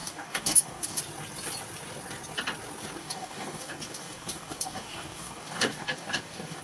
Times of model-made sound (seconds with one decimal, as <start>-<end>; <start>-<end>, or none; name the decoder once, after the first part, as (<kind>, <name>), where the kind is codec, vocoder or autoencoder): 0.0-1.0 (codec, DAC); 3.0-6.6